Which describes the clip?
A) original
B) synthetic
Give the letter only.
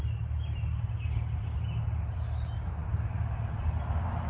A